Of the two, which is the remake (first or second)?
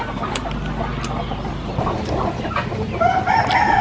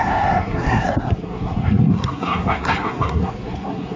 second